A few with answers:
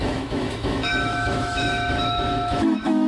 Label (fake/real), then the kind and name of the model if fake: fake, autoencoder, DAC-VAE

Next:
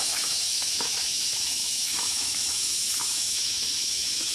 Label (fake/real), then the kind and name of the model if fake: fake, autoencoder, DAC-VAE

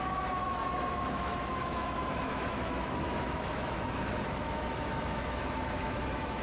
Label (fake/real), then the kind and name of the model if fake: fake, autoencoder, DAC-VAE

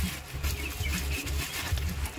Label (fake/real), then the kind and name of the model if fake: real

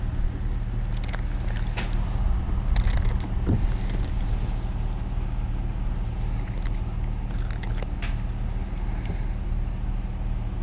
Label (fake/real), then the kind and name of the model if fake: real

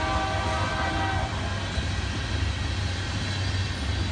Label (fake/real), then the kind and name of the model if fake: real